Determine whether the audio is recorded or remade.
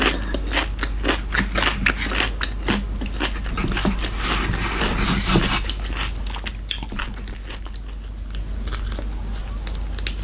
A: recorded